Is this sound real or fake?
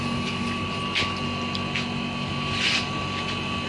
real